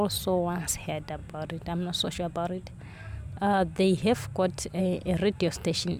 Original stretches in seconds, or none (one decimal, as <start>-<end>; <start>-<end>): 0.0-6.0